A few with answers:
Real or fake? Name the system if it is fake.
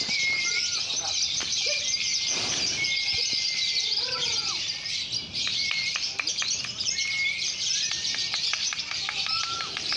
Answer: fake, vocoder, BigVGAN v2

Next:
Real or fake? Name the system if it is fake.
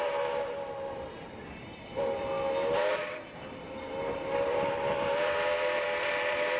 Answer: fake, vocoder, BigVGAN v2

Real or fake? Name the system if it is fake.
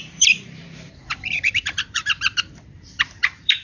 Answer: fake, vocoder, BigVGAN v2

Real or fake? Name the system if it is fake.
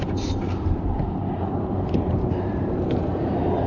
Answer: fake, vocoder, BigVGAN v2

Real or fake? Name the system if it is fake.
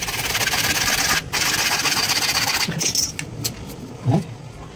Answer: real